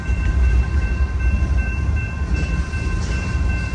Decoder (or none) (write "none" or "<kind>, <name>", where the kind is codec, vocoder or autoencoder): vocoder, BigVGAN v2